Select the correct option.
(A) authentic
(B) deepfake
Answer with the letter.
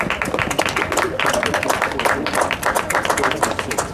A